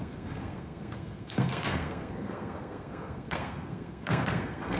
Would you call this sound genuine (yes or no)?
no